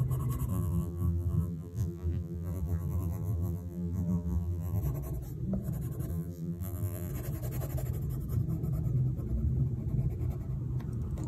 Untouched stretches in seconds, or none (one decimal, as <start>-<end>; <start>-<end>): 0.0-0.5; 4.8-6.1; 7.1-11.3